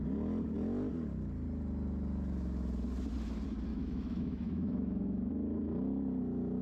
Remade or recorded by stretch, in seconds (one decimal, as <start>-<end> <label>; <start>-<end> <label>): 0.0-3.7 recorded; 3.7-5.3 remade; 5.3-6.6 recorded